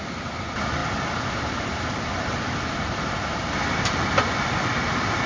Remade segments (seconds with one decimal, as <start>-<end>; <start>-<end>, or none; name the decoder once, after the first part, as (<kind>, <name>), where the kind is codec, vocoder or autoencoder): none